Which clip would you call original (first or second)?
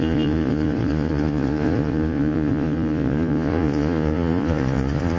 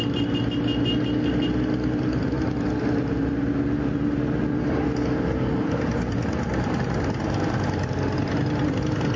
second